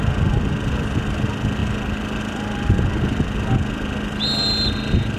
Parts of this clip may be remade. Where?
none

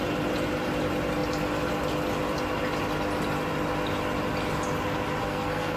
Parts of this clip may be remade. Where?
5.2-5.8 (codec, SNAC)

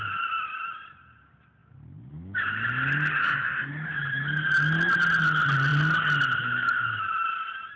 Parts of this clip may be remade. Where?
3.2-3.7 (autoencoder, DAC-VAE)

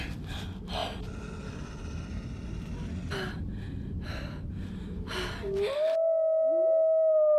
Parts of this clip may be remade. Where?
none

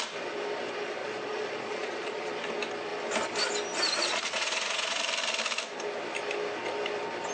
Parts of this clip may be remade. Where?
1.0-2.3 (vocoder, Vocos); 4.0-5.0

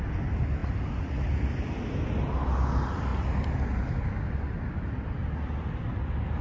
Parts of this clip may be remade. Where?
none

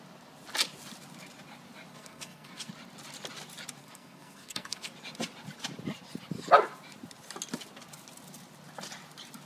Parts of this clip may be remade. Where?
1.9-2.7 (codec, SNAC); 3.8-4.9

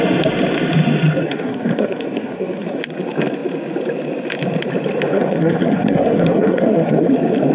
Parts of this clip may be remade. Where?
1.2-2.8 (codec, SNAC); 5.1-7.1